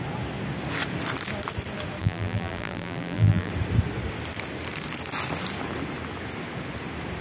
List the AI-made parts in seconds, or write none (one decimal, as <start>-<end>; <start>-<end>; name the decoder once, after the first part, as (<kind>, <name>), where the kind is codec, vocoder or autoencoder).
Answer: 2.0-3.5 (vocoder, BigVGAN v2)